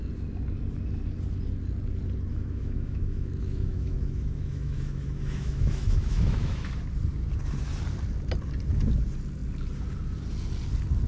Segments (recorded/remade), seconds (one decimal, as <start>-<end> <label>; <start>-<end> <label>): 0.0-2.3 recorded; 2.3-6.7 remade; 6.7-11.1 recorded

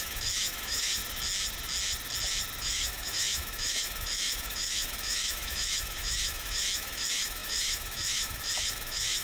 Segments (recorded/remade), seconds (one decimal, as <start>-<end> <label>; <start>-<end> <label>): 0.0-1.0 remade; 1.0-2.6 recorded; 2.6-9.2 remade

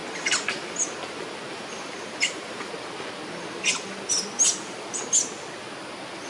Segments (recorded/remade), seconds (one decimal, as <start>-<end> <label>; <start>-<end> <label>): 0.0-2.7 remade; 2.7-6.3 recorded

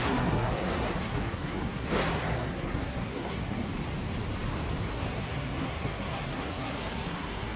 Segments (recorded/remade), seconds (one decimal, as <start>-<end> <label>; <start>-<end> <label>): 0.0-3.7 remade; 3.7-4.9 recorded; 4.9-7.6 remade